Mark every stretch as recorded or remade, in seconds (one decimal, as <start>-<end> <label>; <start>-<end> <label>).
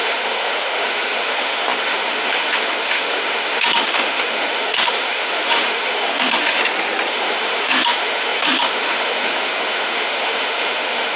0.0-6.6 remade; 6.6-7.1 recorded; 7.1-11.2 remade